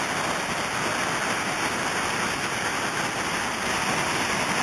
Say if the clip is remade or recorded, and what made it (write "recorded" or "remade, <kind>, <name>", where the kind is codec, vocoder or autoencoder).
recorded